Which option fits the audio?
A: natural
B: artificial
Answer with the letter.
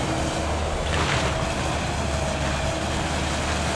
A